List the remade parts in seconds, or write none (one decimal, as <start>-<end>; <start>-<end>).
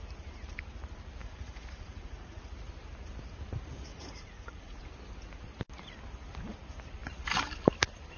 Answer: 1.2-2.4; 3.9-4.8